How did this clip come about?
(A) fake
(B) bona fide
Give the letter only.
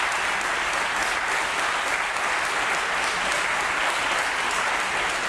B